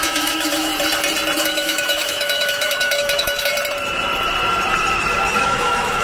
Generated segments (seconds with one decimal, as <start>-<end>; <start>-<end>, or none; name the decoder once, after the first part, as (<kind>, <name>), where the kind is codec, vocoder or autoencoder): 0.0-0.7 (autoencoder, DAC-VAE); 1.4-3.5; 5.4-6.0